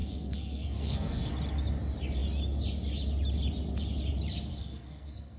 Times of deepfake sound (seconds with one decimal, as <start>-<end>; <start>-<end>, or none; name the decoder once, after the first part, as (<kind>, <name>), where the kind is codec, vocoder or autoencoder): 0.0-1.3 (codec, SNAC); 4.5-5.4